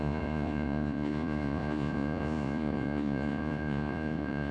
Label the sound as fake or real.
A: fake